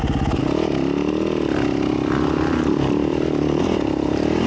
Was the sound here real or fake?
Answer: real